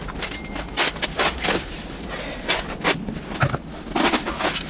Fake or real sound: real